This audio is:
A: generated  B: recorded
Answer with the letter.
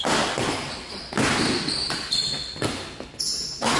B